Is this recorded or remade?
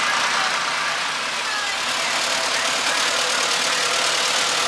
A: recorded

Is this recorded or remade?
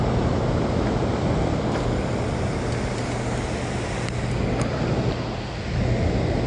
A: recorded